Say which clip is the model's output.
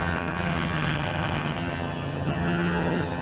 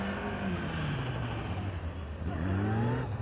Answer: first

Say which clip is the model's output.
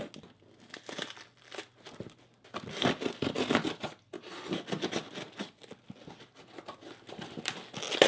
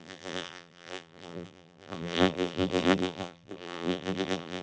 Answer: second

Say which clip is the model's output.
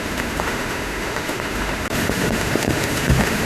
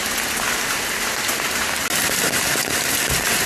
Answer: first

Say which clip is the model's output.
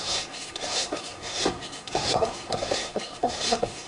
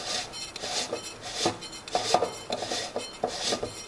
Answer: first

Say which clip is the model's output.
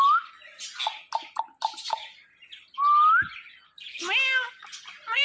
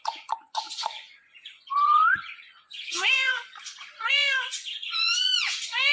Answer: second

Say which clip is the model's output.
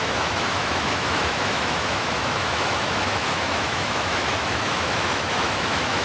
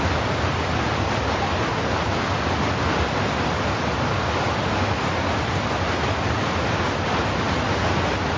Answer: first